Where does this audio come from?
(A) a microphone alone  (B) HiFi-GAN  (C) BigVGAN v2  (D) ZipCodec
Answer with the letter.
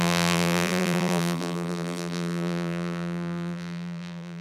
C